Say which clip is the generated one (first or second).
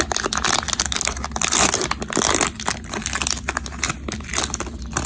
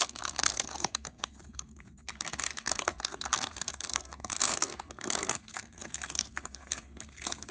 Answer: second